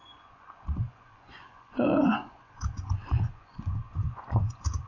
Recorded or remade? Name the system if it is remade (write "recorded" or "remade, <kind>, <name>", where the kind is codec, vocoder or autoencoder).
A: remade, vocoder, Vocos